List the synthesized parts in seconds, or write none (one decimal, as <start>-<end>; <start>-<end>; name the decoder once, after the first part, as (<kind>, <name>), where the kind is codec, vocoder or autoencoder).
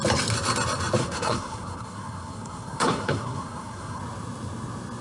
1.0-4.0 (codec, SNAC)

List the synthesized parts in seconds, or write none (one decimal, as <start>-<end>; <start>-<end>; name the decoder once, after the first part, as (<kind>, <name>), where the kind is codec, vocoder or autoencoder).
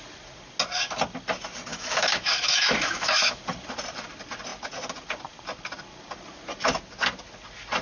1.7-3.4 (autoencoder, DAC-VAE)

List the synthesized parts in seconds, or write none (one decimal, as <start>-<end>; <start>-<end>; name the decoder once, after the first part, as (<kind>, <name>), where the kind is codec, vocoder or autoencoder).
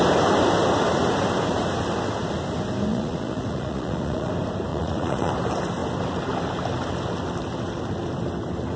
2.9-4.3 (vocoder, Vocos); 4.7-5.3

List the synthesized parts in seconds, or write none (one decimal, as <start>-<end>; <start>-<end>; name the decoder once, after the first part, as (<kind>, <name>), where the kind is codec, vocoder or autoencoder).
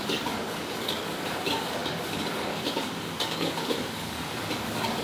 0.0-5.0 (codec, DAC)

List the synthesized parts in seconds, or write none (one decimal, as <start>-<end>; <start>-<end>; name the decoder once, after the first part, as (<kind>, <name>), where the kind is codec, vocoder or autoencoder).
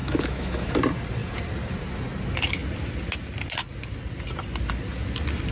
0.0-0.7 (autoencoder, DAC-VAE)